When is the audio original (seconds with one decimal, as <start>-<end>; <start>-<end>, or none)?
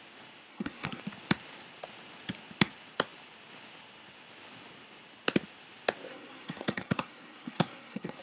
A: 0.0-0.5; 1.0-6.1